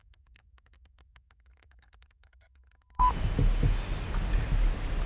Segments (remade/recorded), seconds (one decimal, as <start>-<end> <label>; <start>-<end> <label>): 0.0-3.1 remade; 3.1-5.1 recorded